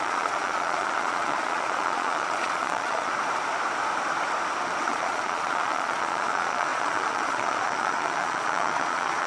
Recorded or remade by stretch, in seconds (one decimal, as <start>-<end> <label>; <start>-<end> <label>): 0.0-3.1 remade; 3.1-4.8 recorded; 4.8-9.3 remade